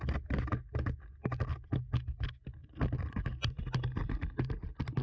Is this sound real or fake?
real